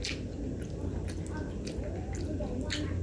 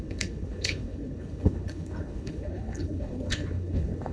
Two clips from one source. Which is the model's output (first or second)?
second